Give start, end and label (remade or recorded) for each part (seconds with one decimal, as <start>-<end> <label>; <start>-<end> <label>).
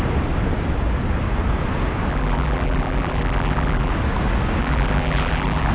0.0-2.1 recorded; 2.1-3.9 remade; 3.9-4.6 recorded; 4.6-5.7 remade